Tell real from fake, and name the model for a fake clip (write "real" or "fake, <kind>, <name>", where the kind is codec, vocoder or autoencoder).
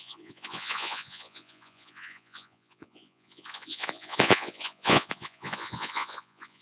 fake, vocoder, Vocos